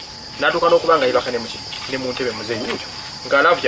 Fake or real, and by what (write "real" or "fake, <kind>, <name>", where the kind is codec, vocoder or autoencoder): real